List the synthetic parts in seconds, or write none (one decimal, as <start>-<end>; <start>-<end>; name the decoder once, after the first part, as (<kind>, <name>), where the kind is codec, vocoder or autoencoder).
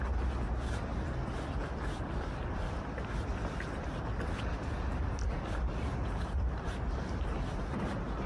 0.9-4.0 (vocoder, BigVGAN v2)